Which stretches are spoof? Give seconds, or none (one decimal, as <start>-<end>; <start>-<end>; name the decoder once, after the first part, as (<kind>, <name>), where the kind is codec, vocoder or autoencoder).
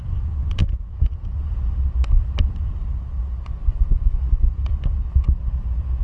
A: 0.6-1.8 (vocoder, Vocos)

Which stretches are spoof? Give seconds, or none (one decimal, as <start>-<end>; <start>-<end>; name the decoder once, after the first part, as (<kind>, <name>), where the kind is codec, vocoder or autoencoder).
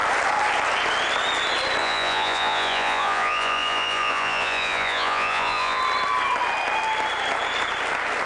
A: 1.8-5.8 (vocoder, Vocos)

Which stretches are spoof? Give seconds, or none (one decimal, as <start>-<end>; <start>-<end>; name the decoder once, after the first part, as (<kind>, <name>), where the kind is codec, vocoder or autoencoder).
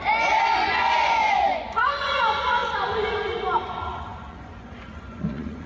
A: 0.0-5.7 (vocoder, Vocos)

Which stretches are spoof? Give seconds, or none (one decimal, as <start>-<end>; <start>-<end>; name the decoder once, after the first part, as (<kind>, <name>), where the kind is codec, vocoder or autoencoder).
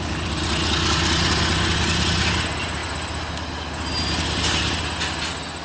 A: none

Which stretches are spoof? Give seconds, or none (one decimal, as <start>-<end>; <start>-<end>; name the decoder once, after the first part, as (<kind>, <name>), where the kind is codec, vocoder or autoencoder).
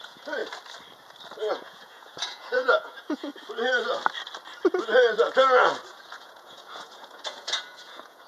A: 0.0-0.4 (vocoder, Vocos); 1.5-3.3; 5.9-8.3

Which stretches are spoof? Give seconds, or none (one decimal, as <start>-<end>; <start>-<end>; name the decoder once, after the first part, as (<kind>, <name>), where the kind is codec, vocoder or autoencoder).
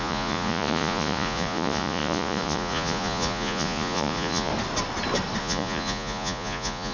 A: 0.0-4.5 (vocoder, Vocos); 5.4-6.9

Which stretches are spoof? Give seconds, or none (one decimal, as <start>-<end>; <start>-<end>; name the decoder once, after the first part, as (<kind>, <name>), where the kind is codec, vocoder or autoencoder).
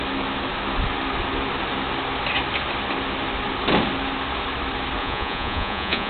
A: 5.0-6.1 (vocoder, Vocos)